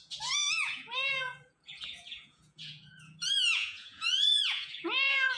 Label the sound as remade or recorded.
remade